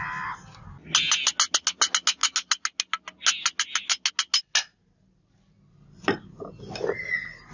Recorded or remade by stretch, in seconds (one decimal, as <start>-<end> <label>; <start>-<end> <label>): 0.0-7.5 recorded

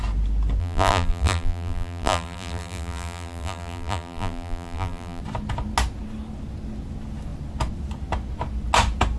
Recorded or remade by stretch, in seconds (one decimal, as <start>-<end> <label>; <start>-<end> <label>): 0.0-0.6 recorded; 0.6-5.2 remade; 5.2-9.2 recorded

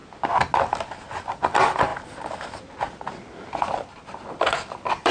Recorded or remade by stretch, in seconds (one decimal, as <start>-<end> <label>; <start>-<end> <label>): 0.0-1.2 recorded; 1.2-1.9 remade; 1.9-4.4 recorded; 4.4-5.1 remade

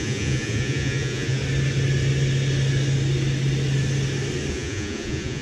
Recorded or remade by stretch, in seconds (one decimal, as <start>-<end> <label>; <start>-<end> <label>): 0.0-1.4 remade; 1.4-4.5 recorded; 4.5-5.4 remade

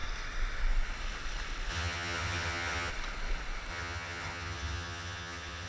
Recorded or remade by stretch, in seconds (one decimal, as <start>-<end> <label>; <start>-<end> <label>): 0.0-1.7 recorded; 1.7-2.9 remade; 2.9-3.7 recorded; 3.7-5.7 remade